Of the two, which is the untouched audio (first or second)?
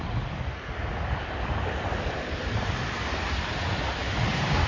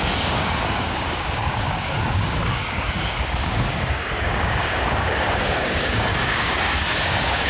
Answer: first